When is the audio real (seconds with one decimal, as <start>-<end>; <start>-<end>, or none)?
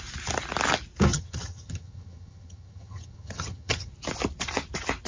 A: 0.0-1.1; 3.9-5.1